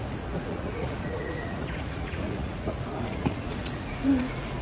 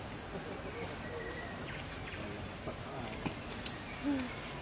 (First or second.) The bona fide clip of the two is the second